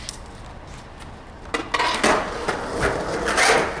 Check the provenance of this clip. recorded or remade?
recorded